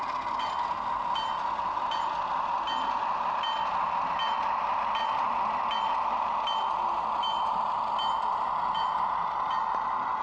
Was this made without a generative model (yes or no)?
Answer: yes